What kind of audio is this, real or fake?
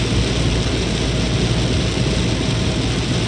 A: real